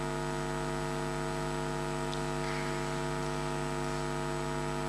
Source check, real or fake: real